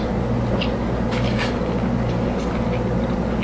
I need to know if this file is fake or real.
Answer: real